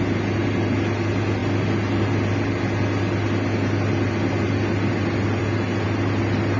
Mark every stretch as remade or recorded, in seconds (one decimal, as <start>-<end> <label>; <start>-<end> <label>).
0.0-6.6 recorded